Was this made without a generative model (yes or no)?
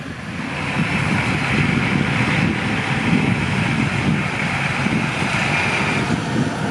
yes